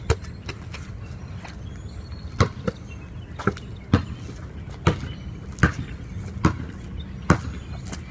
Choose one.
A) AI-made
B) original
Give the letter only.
B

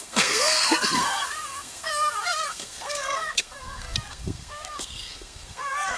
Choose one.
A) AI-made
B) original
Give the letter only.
A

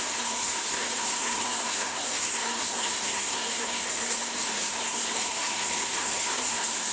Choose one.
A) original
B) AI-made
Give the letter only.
B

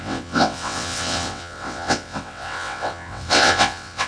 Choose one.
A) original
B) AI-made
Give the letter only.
B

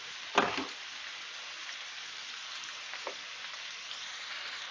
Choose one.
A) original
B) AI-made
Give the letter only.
A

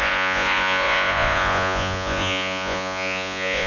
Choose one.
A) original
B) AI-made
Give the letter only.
B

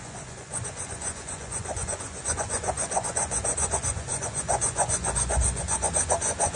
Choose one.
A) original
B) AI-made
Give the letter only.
B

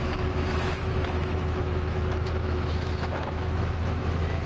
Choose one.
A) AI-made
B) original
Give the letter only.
A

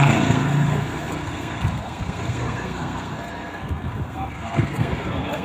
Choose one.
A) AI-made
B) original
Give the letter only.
A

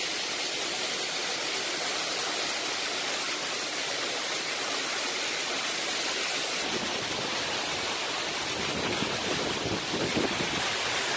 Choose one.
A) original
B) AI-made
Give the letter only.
A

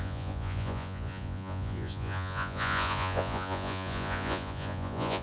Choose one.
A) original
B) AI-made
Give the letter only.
B